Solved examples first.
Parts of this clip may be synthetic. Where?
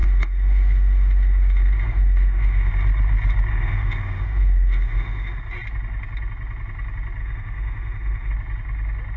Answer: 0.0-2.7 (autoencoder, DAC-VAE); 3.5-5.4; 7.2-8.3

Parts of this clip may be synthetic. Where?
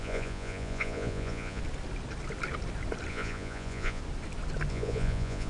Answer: 0.0-1.6 (vocoder, Vocos); 3.1-4.0; 4.7-5.5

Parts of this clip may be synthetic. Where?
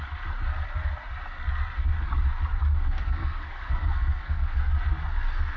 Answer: 2.7-4.6 (codec, SNAC)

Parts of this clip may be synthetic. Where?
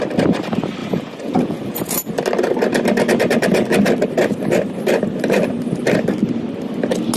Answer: 0.8-2.1 (vocoder, Vocos)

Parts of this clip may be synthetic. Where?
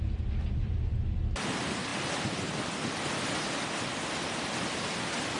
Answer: none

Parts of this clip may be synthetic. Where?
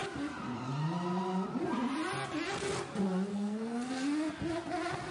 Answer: 3.3-3.9 (codec, SNAC)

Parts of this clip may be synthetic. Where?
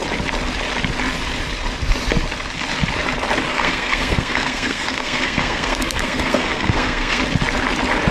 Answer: 3.5-7.2 (codec, SNAC)